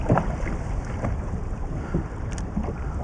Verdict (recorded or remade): recorded